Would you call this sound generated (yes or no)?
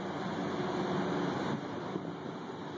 no